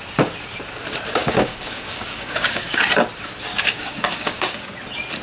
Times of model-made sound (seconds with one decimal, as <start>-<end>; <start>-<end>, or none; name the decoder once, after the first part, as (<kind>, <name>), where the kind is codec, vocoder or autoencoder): 1.2-2.8 (codec, DAC); 3.5-4.7